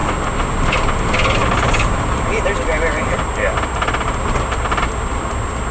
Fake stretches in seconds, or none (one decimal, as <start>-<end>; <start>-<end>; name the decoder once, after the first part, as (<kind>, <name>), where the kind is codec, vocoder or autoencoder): none